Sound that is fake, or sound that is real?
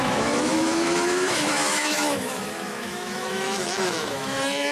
fake